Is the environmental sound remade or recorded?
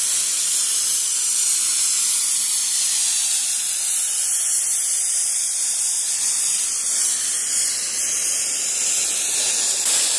recorded